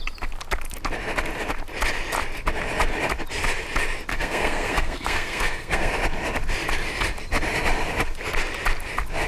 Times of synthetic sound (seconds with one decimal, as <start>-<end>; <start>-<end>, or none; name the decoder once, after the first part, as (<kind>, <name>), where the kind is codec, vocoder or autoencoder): 4.1-5.9 (codec, SNAC)